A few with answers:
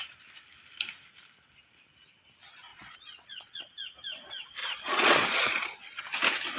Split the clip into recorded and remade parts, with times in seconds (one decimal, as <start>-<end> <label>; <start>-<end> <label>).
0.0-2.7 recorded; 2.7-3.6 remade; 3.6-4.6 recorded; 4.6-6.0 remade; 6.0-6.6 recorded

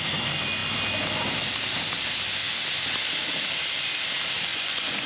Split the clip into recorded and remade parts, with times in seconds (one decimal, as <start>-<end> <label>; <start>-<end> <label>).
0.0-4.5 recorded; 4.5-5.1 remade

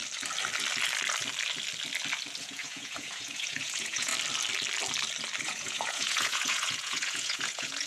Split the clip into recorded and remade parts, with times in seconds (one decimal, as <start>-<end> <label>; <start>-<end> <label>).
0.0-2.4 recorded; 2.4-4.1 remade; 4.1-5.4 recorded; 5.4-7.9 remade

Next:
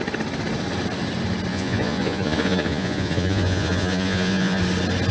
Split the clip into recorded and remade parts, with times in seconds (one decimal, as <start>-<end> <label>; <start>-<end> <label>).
0.0-1.5 recorded; 1.5-4.6 remade; 4.6-5.1 recorded